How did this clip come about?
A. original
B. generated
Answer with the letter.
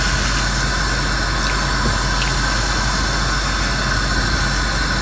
A